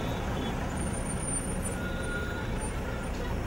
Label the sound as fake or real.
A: real